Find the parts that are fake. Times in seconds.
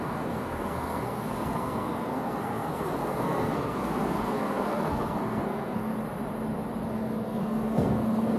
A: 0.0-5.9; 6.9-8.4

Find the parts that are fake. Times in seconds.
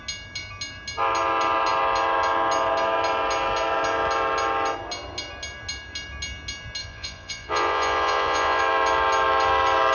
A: 6.8-8.6